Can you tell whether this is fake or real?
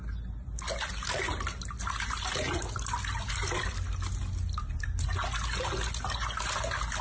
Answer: real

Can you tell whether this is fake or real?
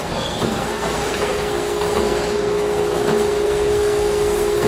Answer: fake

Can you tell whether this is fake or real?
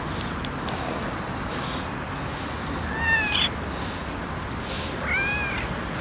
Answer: real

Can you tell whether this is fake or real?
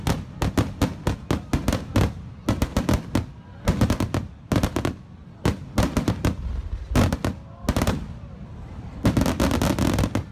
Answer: real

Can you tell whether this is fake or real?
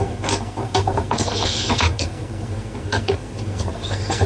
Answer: fake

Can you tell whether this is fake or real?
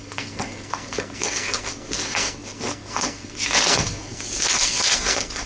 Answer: fake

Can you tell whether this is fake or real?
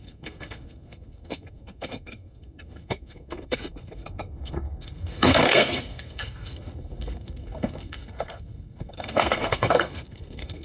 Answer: fake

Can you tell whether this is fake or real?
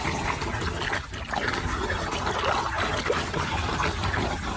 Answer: real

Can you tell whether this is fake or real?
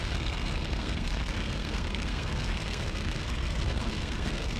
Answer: fake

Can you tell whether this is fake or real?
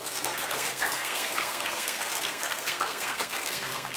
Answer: fake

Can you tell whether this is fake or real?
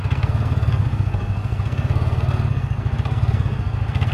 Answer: fake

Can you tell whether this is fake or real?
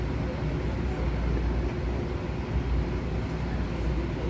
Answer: real